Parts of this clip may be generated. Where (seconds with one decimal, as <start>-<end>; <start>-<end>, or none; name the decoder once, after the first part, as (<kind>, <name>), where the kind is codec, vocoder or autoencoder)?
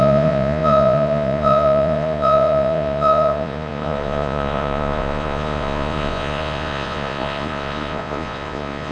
0.0-8.9 (vocoder, Vocos)